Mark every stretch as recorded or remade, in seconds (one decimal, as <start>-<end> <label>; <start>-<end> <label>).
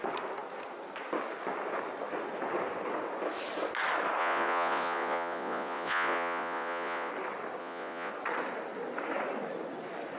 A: 0.0-4.2 recorded; 4.2-7.1 remade; 7.1-7.6 recorded; 7.6-8.1 remade; 8.1-10.2 recorded